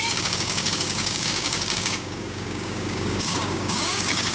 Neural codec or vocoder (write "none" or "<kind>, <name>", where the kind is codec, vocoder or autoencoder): codec, DAC